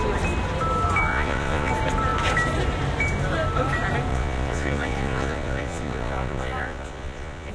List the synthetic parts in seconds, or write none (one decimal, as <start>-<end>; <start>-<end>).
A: 1.1-1.7; 4.1-7.5